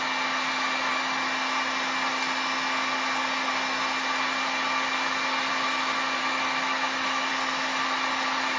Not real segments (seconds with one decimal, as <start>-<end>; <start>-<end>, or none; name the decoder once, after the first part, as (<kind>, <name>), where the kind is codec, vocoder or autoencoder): 6.2-7.3 (autoencoder, DAC-VAE)